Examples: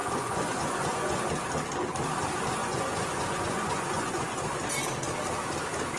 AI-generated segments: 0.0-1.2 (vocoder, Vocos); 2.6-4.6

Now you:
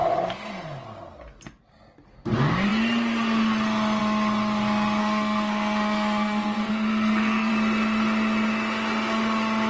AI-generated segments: 5.0-7.5 (codec, SNAC)

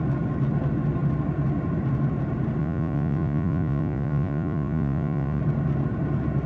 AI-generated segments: 2.6-5.4 (vocoder, Vocos)

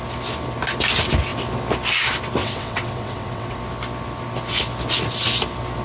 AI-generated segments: 2.4-3.6 (vocoder, WaveNeXt)

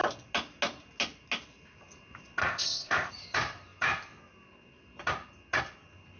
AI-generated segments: 2.4-3.1 (codec, ZipCodec)